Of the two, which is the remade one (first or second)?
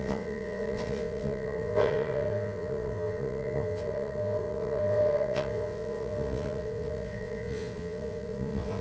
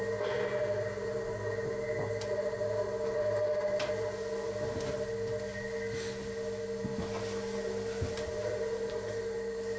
first